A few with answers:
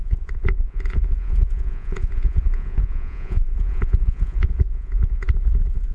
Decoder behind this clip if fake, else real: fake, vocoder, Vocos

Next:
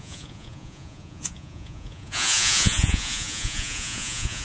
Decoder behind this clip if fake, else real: fake, vocoder, Vocos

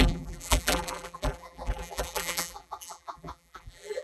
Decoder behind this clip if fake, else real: fake, vocoder, BigVGAN v2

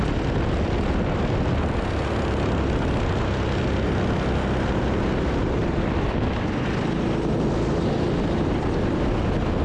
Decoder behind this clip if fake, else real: real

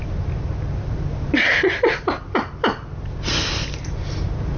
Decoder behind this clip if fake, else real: real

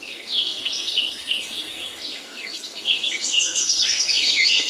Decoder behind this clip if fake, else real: fake, codec, SNAC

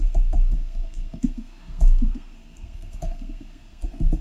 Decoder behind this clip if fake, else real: fake, codec, SNAC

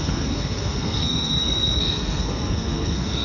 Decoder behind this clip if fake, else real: fake, codec, SNAC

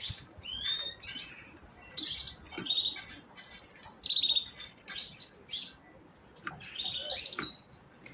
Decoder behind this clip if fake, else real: real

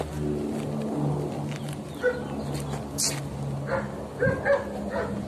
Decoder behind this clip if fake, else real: real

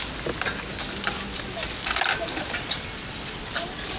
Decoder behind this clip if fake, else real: real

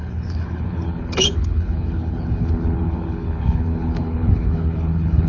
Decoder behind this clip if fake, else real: fake, codec, HILCodec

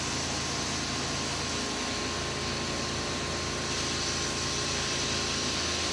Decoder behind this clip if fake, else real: real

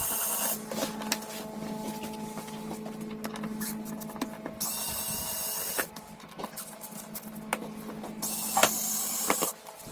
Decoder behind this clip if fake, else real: real